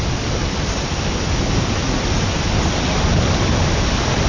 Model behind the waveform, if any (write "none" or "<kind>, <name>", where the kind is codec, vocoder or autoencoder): none